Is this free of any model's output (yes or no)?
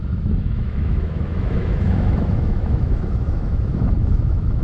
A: no